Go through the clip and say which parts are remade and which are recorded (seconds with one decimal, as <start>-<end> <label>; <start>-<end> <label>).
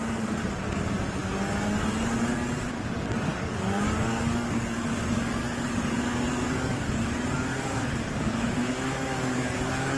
0.0-3.3 recorded; 3.3-6.8 remade; 6.8-7.5 recorded; 7.5-10.0 remade